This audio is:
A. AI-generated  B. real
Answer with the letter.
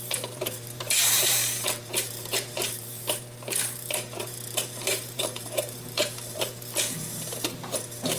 A